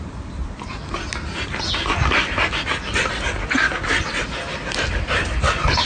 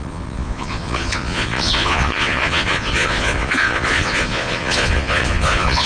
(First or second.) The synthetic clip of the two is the second